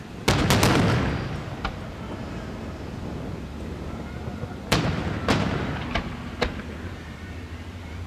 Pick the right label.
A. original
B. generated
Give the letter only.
A